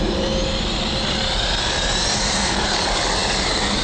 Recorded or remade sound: recorded